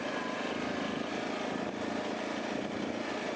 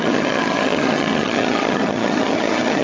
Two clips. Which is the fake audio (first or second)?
second